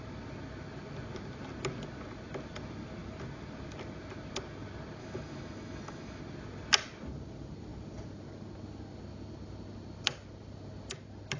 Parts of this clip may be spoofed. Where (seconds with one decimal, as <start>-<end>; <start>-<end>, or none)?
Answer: 5.0-6.2